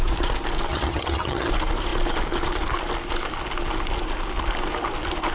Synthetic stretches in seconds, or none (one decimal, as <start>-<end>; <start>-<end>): 0.7-1.5